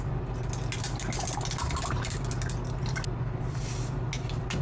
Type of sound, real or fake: real